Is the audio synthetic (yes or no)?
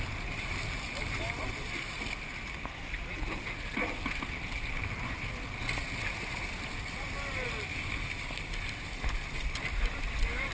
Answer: no